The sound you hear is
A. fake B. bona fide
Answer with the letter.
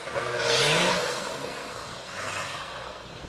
A